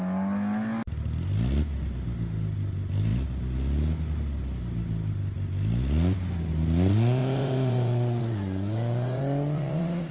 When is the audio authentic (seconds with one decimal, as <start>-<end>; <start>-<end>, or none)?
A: 0.0-7.2